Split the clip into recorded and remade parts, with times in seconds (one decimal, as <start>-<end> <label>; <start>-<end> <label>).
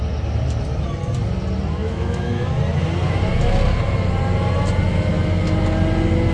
0.0-1.8 recorded; 1.8-2.5 remade; 2.5-6.3 recorded